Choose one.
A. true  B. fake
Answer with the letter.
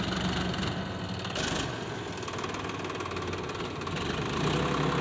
A